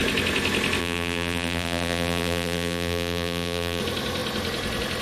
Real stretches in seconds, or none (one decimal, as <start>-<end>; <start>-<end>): 0.0-0.8; 3.8-5.0